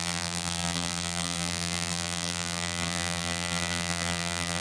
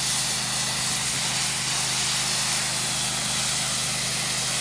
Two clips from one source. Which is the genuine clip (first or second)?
second